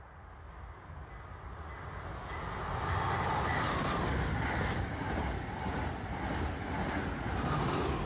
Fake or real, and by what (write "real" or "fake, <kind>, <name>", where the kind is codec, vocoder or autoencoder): real